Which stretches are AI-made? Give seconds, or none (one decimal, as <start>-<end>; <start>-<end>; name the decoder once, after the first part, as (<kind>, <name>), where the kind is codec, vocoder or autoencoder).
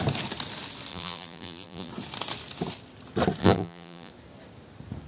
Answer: 0.9-1.9 (vocoder, BigVGAN v2); 3.4-4.1